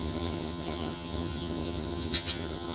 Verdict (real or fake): fake